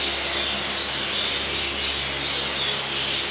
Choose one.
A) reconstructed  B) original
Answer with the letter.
B